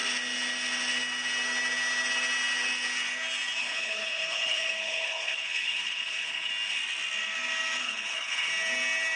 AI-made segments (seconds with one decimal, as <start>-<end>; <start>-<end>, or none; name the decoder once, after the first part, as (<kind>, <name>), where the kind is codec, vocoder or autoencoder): 3.6-6.5 (codec, HILCodec); 7.8-8.5